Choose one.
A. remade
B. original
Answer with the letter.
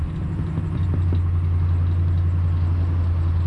B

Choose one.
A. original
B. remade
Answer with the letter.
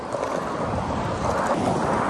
A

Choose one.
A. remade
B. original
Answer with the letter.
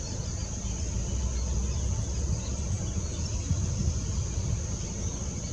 B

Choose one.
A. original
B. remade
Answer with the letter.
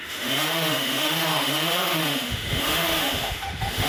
B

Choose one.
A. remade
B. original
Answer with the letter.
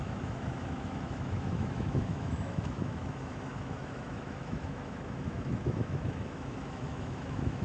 A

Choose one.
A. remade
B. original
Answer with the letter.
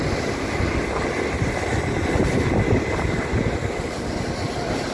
B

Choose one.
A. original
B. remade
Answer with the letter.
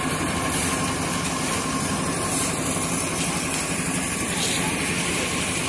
A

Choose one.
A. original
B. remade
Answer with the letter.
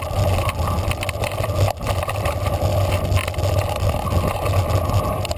A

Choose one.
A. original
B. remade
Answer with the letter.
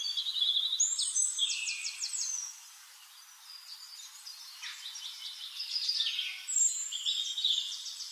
A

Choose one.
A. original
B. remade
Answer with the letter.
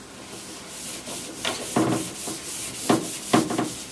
A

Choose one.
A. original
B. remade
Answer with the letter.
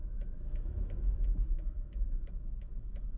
B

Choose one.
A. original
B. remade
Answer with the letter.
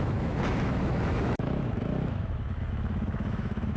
B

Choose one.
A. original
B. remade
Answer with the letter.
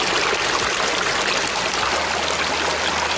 A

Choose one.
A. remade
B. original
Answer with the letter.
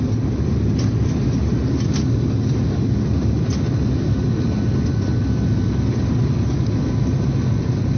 B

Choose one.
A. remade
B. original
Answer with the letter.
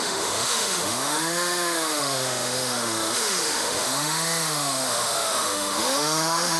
A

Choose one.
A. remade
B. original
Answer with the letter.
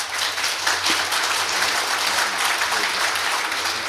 B